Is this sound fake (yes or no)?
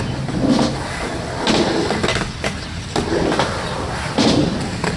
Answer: no